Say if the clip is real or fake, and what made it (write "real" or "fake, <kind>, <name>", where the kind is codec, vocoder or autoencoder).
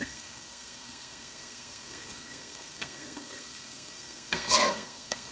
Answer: fake, codec, SNAC